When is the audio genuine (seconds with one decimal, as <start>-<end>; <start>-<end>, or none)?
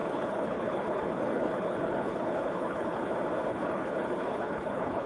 3.1-3.5